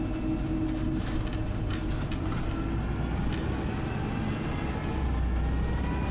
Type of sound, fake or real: real